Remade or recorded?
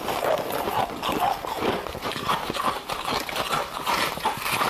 recorded